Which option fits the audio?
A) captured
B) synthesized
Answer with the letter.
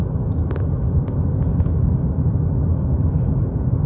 A